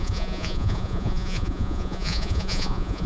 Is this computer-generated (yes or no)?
yes